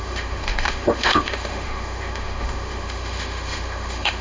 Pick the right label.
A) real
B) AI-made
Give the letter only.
B